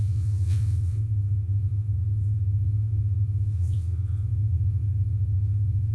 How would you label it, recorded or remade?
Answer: remade